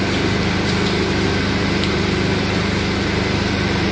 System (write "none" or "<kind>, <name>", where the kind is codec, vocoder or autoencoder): none